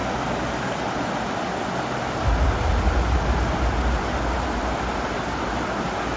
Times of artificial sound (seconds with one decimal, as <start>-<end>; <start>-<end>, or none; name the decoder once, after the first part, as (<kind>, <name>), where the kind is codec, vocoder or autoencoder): none